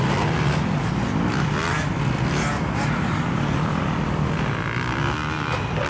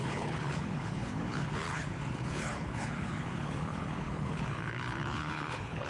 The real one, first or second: first